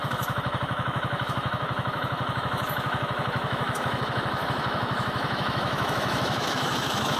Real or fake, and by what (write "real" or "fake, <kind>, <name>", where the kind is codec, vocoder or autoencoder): fake, autoencoder, DAC-VAE